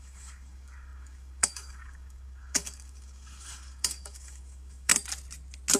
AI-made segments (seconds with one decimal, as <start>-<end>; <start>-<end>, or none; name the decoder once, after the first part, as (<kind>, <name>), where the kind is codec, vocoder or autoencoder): 0.0-4.9 (codec, DAC)